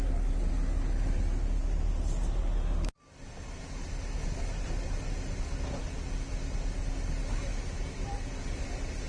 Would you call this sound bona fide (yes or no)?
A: yes